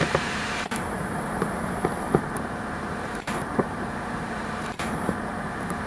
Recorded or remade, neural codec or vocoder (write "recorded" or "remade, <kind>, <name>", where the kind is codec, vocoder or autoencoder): remade, vocoder, BigVGAN v2